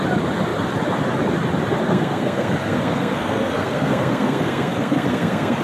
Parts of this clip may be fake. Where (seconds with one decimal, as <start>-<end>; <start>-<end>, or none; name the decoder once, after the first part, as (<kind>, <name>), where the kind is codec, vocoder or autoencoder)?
1.8-5.6 (codec, SNAC)